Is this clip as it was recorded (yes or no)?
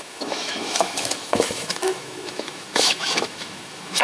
no